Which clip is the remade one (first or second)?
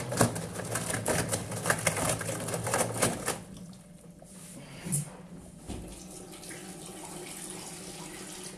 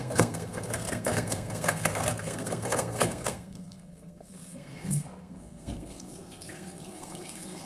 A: second